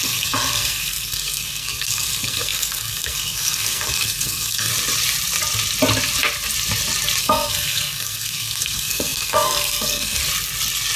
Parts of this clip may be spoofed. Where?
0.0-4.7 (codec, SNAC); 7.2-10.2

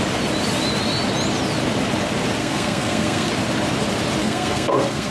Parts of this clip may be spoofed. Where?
2.4-3.3 (codec, SNAC); 4.2-5.1